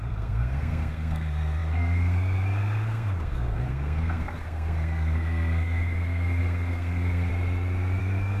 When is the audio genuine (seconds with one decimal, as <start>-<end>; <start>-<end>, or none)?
7.3-8.0